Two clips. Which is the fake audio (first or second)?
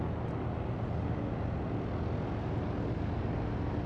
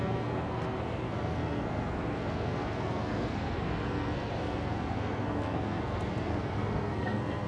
second